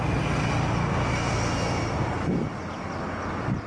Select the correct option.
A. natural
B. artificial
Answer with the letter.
A